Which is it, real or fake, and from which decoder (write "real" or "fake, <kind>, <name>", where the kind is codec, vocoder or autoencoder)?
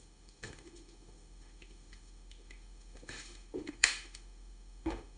fake, autoencoder, DAC-VAE